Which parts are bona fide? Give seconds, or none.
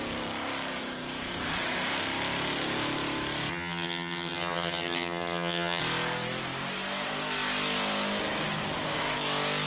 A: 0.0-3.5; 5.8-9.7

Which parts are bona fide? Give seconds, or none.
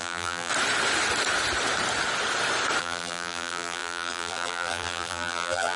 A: 0.5-2.8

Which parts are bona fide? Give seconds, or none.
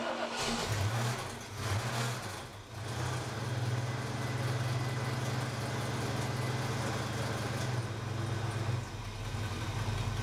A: 0.0-10.2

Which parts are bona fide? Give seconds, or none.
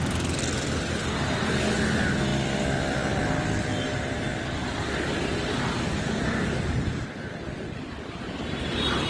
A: 0.0-9.1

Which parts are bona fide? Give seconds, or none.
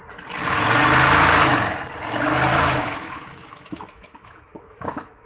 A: 0.0-2.5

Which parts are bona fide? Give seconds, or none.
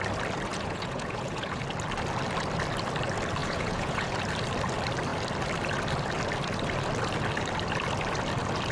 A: 0.0-0.5; 1.6-3.4; 4.1-8.7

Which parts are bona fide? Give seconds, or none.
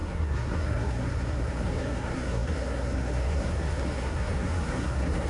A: none